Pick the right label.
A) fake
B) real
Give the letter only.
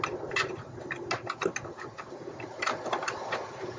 B